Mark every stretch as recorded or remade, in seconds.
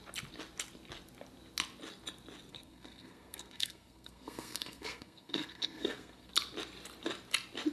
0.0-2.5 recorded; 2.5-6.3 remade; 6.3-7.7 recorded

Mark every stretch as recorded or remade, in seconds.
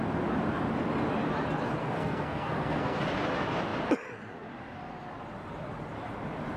0.0-1.8 recorded; 1.8-3.0 remade; 3.0-6.6 recorded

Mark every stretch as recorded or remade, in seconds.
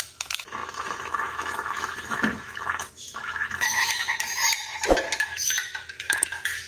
0.0-4.4 remade; 4.4-5.2 recorded; 5.2-6.7 remade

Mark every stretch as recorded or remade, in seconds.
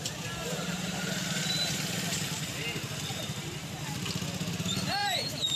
0.0-0.4 recorded; 0.4-1.1 remade; 1.1-3.2 recorded; 3.2-3.9 remade; 3.9-5.0 recorded; 5.0-5.6 remade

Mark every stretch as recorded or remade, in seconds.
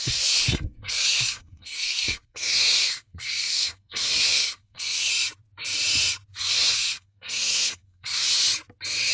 0.0-5.1 remade; 5.1-6.4 recorded; 6.4-8.4 remade; 8.4-9.1 recorded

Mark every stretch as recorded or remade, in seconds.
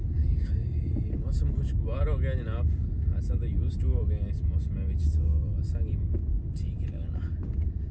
0.0-7.9 recorded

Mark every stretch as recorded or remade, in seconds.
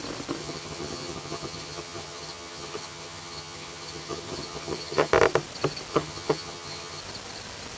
0.0-0.4 recorded; 0.4-5.1 remade; 5.1-5.9 recorded; 5.9-7.0 remade; 7.0-7.8 recorded